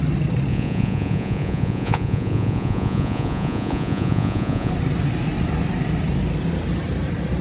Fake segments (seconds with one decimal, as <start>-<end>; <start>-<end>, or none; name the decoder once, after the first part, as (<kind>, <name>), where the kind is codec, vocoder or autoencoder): 0.5-4.7 (vocoder, Vocos)

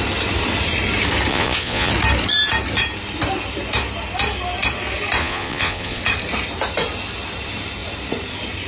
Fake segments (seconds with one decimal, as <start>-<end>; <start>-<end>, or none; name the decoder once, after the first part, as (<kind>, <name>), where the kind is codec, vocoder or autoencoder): 1.3-1.9 (vocoder, Vocos); 5.2-6.0